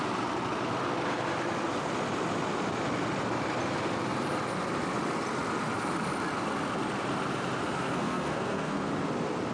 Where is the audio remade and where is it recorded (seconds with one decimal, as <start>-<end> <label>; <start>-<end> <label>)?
0.0-7.6 recorded; 7.6-8.9 remade; 8.9-9.5 recorded